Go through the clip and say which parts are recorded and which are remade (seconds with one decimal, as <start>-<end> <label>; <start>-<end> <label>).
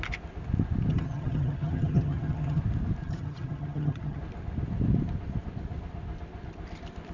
0.0-0.9 recorded; 0.9-2.6 remade; 2.6-3.0 recorded; 3.0-4.2 remade; 4.2-7.1 recorded